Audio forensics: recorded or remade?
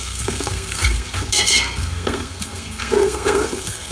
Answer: remade